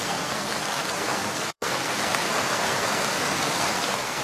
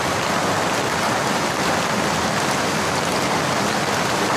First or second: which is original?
second